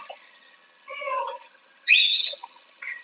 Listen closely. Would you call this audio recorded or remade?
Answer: remade